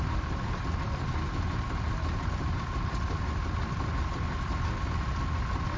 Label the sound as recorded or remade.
recorded